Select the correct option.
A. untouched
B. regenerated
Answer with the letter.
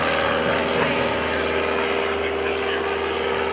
A